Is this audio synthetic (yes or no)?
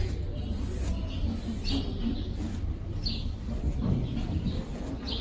no